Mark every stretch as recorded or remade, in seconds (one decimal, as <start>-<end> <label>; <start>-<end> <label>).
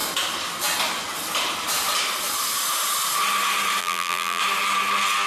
0.0-3.8 recorded; 3.8-4.4 remade; 4.4-5.3 recorded